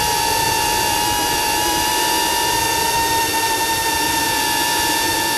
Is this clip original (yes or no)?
no